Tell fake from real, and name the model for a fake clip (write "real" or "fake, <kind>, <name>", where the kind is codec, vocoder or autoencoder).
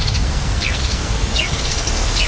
fake, codec, SNAC